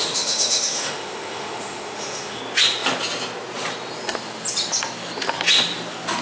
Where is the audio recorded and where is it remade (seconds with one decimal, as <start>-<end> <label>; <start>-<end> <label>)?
0.0-2.4 remade; 2.4-6.2 recorded